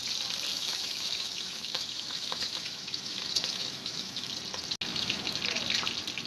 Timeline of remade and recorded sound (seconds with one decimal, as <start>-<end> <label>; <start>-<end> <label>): 0.0-0.5 recorded; 0.5-4.3 remade; 4.3-4.9 recorded; 4.9-5.4 remade; 5.4-6.3 recorded